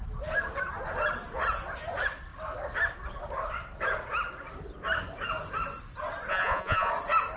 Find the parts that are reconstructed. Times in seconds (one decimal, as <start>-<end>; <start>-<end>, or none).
6.3-6.9